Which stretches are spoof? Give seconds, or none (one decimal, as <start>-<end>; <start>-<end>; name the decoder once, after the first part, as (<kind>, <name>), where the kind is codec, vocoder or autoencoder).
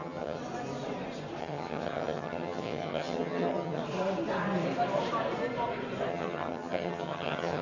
0.0-0.4 (vocoder, HiFi-GAN); 1.4-3.8; 6.1-7.6